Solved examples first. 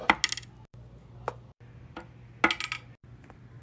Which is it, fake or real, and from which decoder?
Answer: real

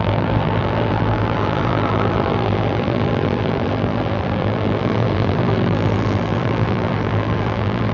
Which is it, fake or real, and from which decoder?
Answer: fake, vocoder, BigVGAN v2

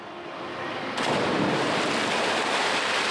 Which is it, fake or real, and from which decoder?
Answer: real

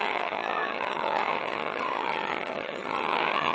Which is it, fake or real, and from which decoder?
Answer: fake, vocoder, HiFi-GAN